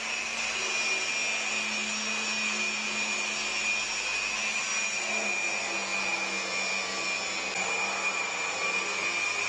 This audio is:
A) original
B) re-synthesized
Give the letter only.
A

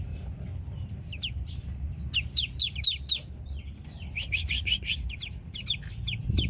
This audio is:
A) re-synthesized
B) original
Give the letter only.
A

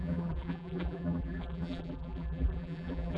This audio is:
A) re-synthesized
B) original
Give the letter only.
A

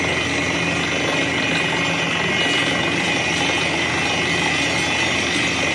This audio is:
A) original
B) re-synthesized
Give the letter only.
A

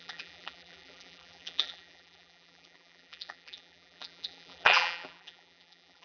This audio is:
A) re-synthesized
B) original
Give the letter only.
A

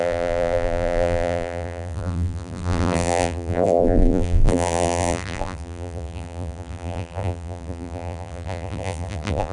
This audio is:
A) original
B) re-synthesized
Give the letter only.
B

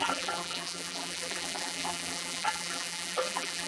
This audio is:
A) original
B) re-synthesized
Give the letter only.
B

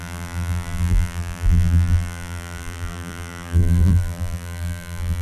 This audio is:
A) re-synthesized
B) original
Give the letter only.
A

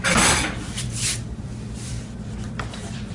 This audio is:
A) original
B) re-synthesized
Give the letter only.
B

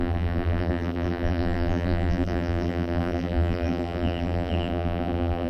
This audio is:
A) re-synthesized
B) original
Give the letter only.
A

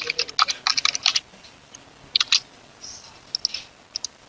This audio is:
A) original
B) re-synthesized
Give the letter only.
A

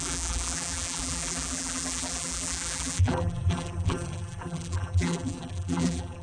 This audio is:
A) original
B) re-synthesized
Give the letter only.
B